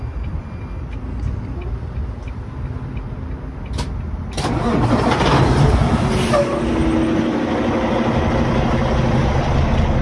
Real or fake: real